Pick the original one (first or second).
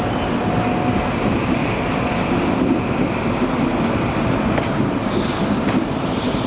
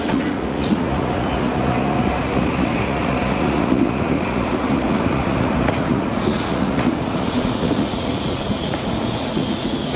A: first